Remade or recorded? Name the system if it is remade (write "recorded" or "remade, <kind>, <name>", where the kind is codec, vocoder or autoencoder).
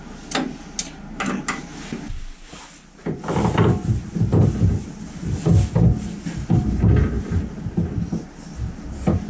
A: recorded